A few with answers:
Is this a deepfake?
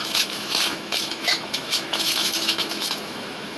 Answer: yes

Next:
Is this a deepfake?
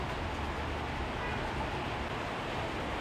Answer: no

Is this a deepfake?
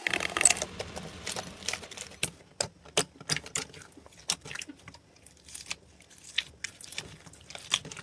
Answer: no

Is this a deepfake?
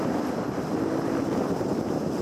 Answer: no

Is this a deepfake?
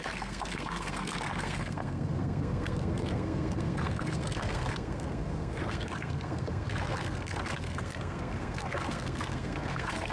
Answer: yes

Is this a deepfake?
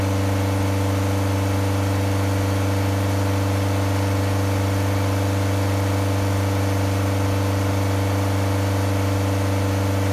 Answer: no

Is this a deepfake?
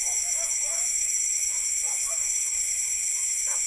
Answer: yes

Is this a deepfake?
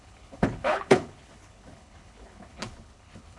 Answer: yes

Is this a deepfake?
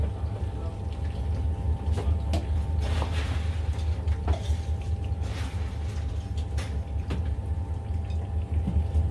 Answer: no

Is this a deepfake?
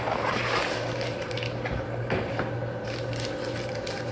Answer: no